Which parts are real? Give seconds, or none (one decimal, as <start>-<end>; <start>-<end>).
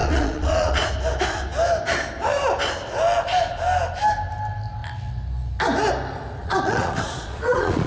0.9-6.4